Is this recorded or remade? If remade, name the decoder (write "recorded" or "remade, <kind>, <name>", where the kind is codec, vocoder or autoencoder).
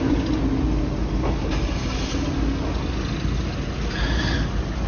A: recorded